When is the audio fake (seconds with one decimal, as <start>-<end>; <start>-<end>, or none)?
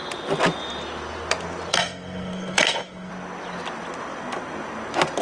1.7-3.1